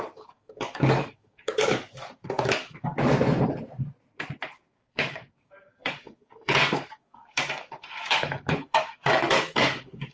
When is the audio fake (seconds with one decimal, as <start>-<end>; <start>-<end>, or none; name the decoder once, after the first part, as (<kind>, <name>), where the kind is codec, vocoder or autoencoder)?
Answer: 0.0-2.9 (codec, DAC); 4.5-10.1